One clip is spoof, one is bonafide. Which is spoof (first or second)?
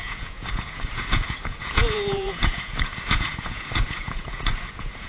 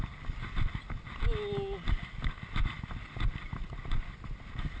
first